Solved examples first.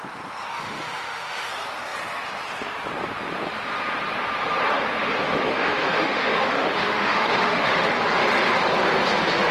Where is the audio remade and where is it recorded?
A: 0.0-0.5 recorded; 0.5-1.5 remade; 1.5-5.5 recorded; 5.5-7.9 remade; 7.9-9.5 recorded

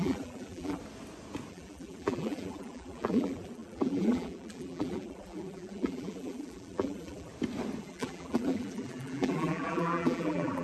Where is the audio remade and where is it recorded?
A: 0.0-0.8 remade; 0.8-1.5 recorded; 1.5-7.3 remade; 7.3-7.8 recorded; 7.8-10.6 remade

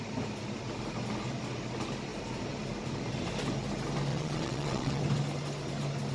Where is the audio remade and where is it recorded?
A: 0.0-4.1 recorded; 4.1-5.0 remade; 5.0-6.1 recorded